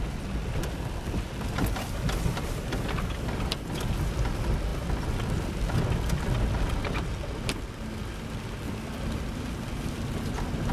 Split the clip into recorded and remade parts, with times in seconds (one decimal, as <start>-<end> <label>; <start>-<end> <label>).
0.0-10.7 recorded